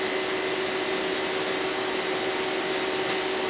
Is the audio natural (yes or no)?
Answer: yes